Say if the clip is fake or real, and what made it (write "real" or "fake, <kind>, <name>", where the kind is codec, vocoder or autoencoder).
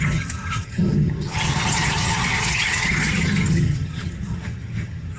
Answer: fake, vocoder, HiFi-GAN